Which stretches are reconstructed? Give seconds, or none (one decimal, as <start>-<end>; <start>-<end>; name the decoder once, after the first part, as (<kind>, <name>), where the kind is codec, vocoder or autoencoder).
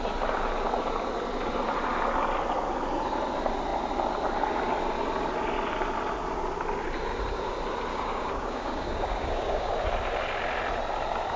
7.9-9.7 (codec, DAC)